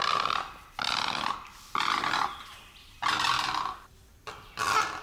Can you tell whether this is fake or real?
real